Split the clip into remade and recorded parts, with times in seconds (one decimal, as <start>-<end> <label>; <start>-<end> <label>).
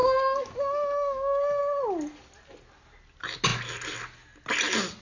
0.0-1.6 remade; 1.6-5.0 recorded